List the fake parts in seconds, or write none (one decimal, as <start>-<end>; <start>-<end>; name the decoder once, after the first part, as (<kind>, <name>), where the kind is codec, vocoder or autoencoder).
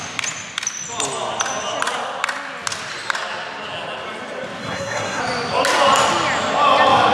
4.6-5.2 (codec, SNAC)